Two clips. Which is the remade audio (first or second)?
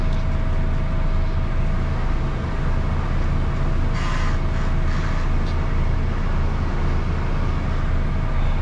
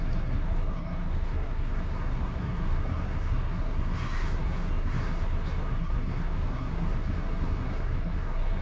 second